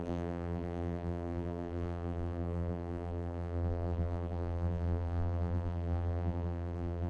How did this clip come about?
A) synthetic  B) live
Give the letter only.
A